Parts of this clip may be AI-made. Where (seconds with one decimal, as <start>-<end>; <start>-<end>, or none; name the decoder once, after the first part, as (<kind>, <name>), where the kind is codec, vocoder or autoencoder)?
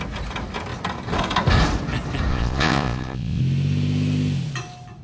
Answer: 2.3-3.4 (vocoder, Vocos)